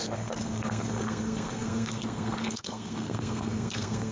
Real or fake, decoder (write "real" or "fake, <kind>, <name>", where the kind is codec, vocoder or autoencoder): fake, codec, SNAC